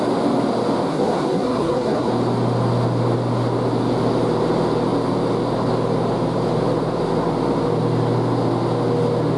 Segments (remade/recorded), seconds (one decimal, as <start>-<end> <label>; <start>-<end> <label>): 0.0-0.9 recorded; 0.9-2.1 remade; 2.1-9.4 recorded